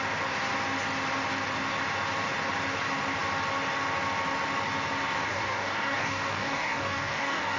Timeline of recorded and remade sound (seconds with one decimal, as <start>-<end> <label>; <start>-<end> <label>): 0.0-5.3 recorded; 5.3-7.6 remade